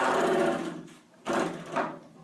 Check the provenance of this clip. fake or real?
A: real